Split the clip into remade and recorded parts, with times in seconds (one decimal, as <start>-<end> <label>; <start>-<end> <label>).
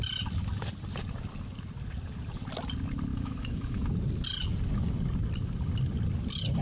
0.0-3.1 recorded; 3.1-3.9 remade; 3.9-6.6 recorded